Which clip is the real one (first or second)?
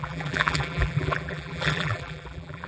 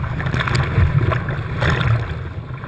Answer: second